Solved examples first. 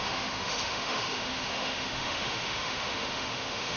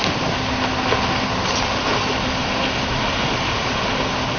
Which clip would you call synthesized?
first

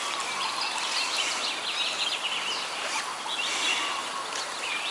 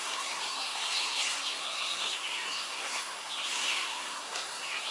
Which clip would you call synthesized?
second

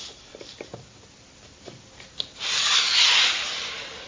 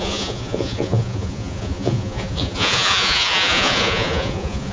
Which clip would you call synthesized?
second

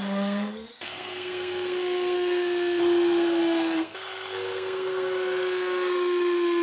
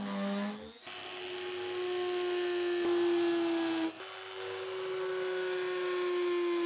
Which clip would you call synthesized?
first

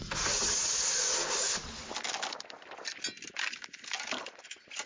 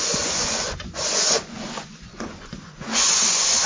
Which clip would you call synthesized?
second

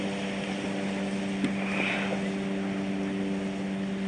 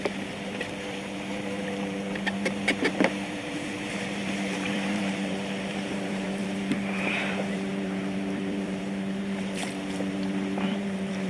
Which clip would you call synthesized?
second